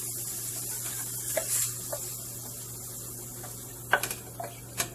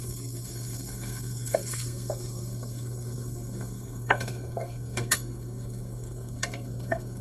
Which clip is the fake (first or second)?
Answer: second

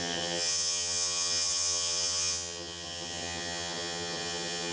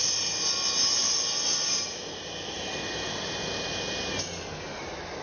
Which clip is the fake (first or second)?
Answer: first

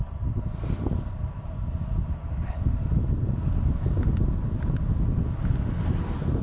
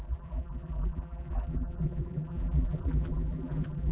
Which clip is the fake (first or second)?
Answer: second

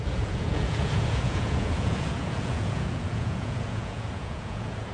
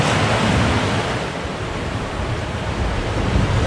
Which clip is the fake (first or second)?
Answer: first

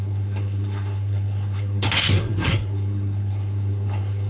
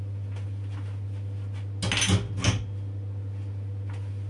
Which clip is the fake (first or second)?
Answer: first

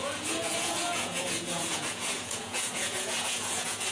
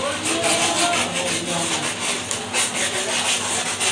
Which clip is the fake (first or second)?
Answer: first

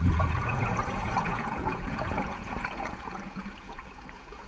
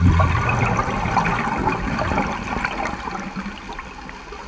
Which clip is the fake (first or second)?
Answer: first